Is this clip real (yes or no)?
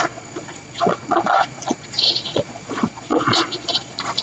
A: no